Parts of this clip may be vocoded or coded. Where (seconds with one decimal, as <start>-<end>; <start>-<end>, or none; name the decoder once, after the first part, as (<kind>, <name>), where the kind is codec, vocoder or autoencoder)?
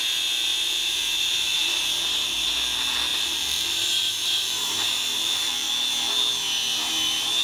0.5-2.5 (vocoder, BigVGAN v2); 3.1-5.7